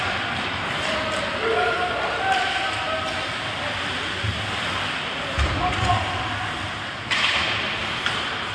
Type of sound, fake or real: real